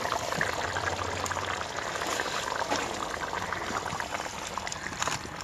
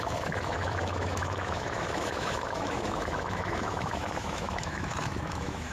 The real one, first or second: first